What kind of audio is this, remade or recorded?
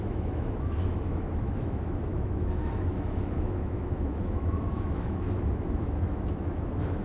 remade